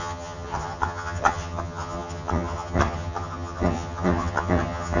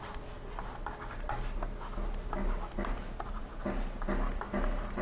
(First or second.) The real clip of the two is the second